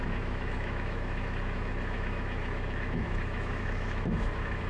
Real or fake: fake